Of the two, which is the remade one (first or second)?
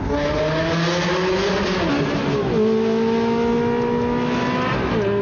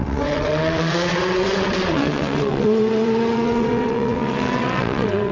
second